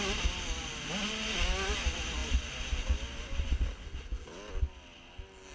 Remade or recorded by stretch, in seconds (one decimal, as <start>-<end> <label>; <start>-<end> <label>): 0.0-5.5 recorded